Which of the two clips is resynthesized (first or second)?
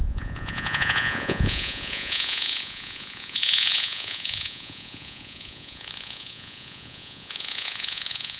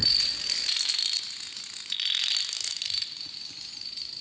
first